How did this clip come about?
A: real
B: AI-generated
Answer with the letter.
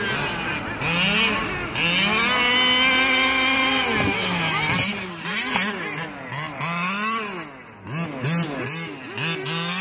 A